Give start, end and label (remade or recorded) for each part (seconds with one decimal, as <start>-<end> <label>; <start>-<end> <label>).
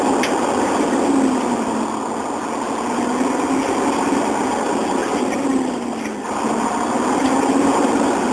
0.0-8.3 recorded